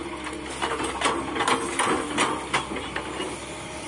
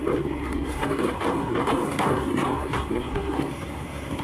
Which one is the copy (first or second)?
second